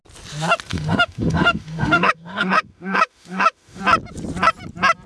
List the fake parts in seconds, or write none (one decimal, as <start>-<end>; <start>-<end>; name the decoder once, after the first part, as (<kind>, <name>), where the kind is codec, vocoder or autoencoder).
0.7-3.8 (autoencoder, DAC-VAE)